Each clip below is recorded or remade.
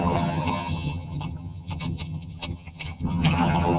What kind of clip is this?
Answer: remade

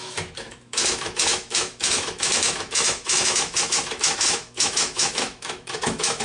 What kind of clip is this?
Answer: remade